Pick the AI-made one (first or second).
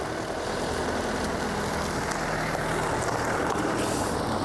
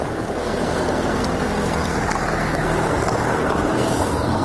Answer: second